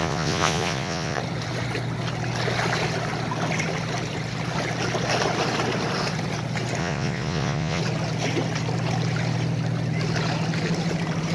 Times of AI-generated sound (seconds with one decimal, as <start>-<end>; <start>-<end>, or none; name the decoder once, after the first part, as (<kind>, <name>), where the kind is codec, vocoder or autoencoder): 0.0-1.2 (vocoder, Vocos); 6.8-7.8